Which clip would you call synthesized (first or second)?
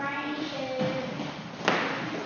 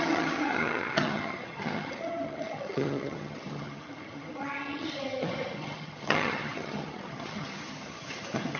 second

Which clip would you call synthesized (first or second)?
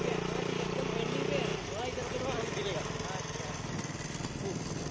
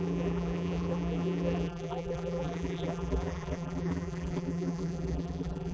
second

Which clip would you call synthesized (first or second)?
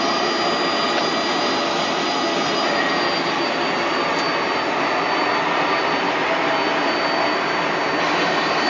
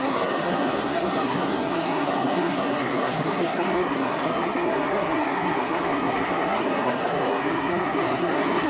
second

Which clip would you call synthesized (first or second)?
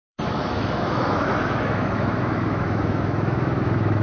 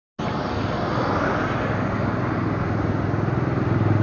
first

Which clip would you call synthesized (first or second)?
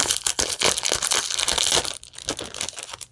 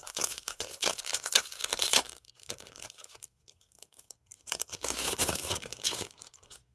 second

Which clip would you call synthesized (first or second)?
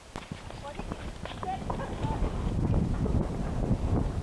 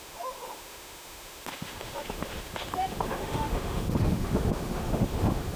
second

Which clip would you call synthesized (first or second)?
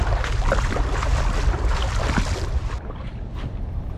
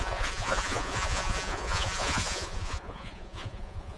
second